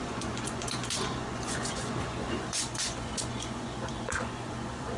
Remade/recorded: remade